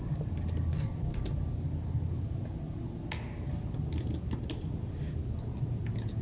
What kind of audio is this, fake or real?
real